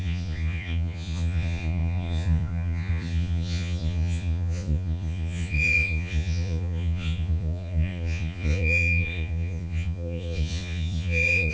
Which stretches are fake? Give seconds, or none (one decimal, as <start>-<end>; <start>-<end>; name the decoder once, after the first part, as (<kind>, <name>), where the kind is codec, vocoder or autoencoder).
0.0-11.5 (vocoder, Vocos)